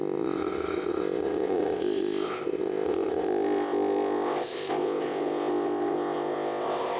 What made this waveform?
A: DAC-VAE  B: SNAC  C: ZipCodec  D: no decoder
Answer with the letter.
C